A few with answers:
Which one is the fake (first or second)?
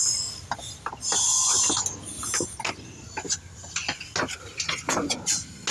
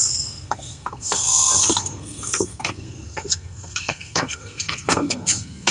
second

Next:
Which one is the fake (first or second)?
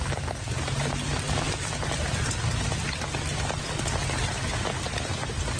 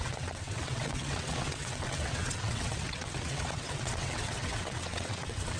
second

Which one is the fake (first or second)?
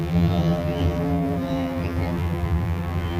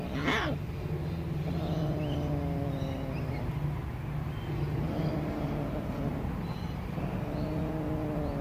first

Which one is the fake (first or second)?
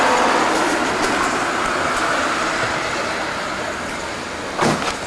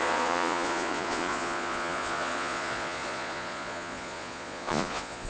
second